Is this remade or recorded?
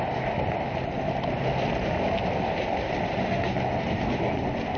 recorded